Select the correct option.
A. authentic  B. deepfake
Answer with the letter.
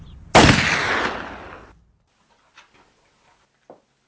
A